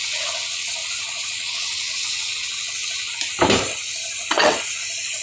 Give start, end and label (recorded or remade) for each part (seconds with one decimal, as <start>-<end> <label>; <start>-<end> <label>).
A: 0.0-3.1 remade; 3.1-3.7 recorded; 3.7-4.8 remade; 4.8-5.2 recorded